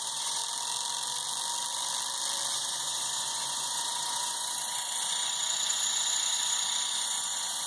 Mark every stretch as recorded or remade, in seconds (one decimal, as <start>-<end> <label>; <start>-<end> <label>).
0.0-0.4 remade; 0.4-2.5 recorded; 2.5-7.7 remade